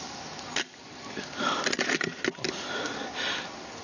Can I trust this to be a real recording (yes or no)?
yes